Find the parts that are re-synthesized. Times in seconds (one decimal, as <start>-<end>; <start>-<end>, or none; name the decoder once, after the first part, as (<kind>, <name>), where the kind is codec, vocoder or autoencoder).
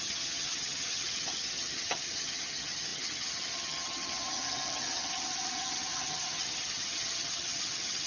0.0-8.1 (vocoder, HiFi-GAN)